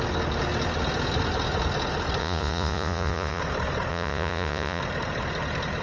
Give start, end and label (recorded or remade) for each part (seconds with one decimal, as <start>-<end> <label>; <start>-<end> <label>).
0.0-2.2 recorded; 2.2-3.4 remade; 3.4-3.9 recorded; 3.9-4.8 remade; 4.8-5.8 recorded